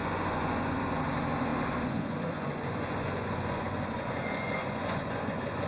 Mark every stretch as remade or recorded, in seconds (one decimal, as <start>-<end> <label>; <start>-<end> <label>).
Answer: 0.0-5.7 remade